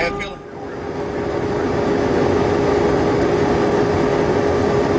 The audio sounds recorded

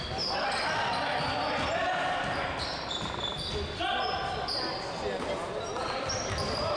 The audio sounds recorded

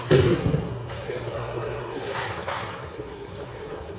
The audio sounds remade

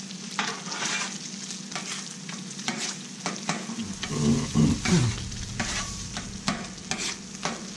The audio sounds recorded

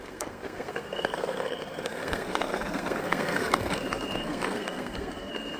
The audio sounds remade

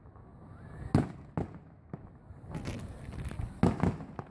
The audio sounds recorded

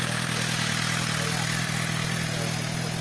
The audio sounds recorded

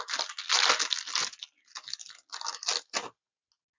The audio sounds recorded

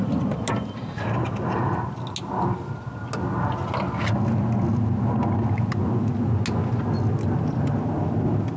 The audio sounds recorded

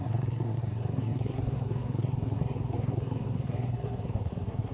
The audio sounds remade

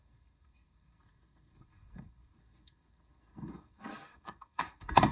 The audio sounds remade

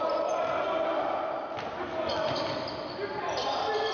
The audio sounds recorded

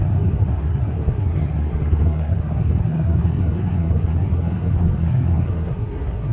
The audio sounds remade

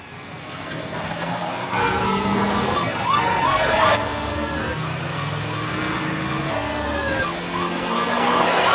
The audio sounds remade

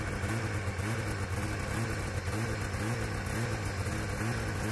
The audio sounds recorded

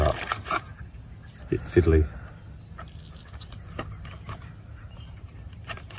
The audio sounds recorded